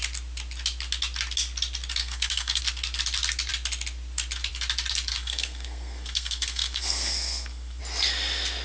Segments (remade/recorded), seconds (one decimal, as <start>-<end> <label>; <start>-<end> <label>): 0.0-2.0 recorded; 2.0-2.6 remade; 2.6-5.1 recorded; 5.1-7.8 remade; 7.8-8.6 recorded